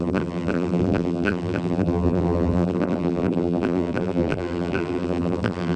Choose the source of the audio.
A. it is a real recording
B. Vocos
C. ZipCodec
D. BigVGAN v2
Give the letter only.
D